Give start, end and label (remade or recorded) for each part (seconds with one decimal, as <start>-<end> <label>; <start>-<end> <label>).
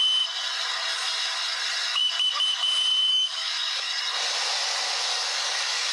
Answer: 0.0-3.1 recorded; 3.1-3.9 remade; 3.9-5.1 recorded; 5.1-5.9 remade